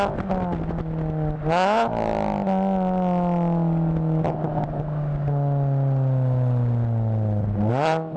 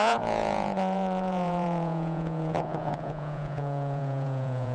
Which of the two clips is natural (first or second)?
first